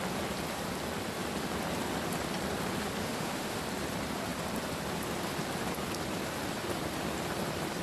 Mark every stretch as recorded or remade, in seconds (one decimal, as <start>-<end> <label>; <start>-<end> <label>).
0.0-3.0 recorded; 3.0-3.6 remade; 3.6-7.8 recorded